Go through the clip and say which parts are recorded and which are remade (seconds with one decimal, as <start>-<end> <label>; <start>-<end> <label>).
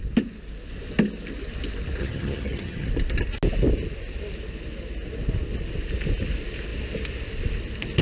0.0-2.0 recorded; 2.0-2.9 remade; 2.9-8.0 recorded